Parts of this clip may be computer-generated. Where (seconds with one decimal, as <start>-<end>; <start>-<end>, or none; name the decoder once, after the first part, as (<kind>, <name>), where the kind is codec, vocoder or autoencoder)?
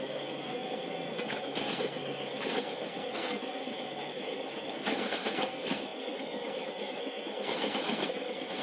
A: 0.0-8.6 (codec, SNAC)